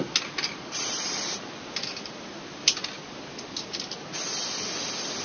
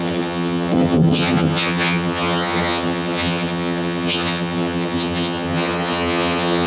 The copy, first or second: second